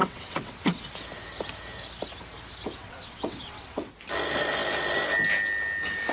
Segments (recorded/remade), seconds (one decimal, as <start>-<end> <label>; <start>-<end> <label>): 0.0-0.8 remade; 0.8-2.8 recorded; 2.8-3.9 remade; 3.9-6.1 recorded